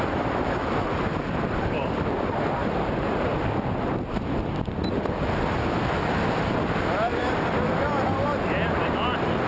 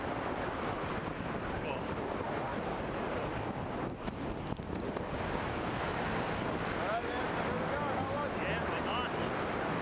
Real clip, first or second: second